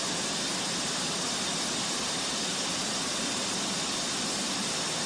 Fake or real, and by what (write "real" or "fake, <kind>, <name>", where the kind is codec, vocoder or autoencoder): real